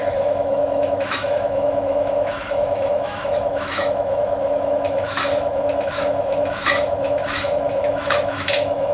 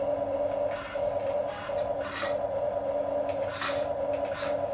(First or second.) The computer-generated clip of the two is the first